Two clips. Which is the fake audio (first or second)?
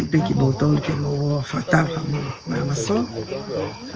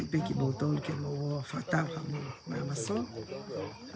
first